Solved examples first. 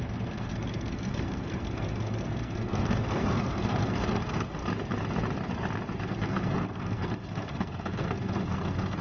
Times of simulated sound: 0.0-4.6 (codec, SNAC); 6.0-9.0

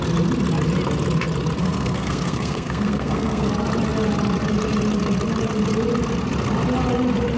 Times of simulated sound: 1.6-3.5 (codec, SNAC)

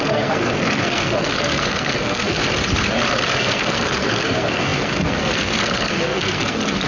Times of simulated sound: 0.0-2.4 (codec, SNAC); 3.3-6.9